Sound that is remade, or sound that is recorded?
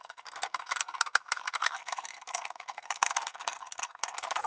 remade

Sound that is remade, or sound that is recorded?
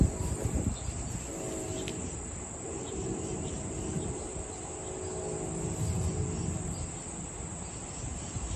recorded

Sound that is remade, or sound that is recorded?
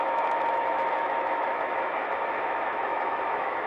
remade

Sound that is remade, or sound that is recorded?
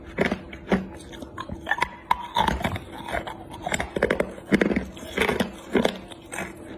recorded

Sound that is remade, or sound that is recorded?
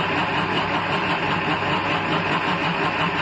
recorded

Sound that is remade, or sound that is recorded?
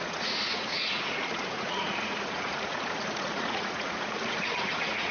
remade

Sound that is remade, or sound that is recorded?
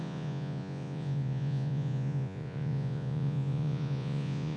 remade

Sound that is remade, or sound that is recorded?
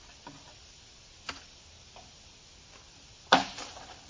recorded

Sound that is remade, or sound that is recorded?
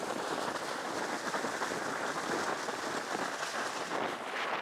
recorded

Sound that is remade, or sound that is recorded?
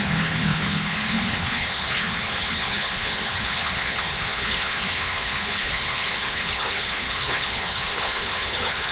remade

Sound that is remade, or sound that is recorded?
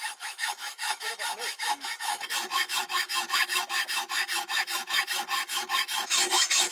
remade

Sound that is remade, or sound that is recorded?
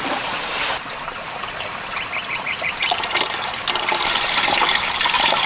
remade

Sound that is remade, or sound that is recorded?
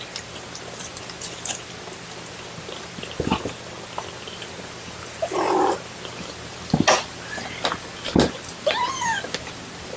recorded